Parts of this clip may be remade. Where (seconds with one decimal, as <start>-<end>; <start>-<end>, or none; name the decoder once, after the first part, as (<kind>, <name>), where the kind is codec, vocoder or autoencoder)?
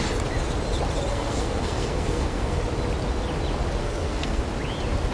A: 1.1-2.6 (codec, SNAC); 3.8-4.4